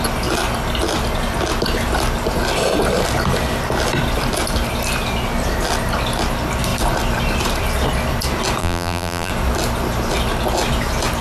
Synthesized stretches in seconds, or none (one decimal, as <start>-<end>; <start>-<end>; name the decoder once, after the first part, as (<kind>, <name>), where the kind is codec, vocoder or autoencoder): 8.6-9.3 (vocoder, BigVGAN v2)